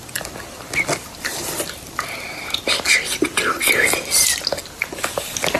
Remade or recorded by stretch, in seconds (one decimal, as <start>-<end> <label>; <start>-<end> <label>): 0.0-5.6 recorded